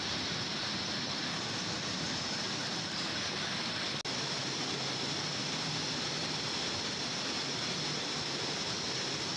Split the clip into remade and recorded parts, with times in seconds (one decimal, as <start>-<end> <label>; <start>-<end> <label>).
0.0-9.4 recorded